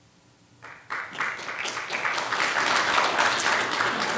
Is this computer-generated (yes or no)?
no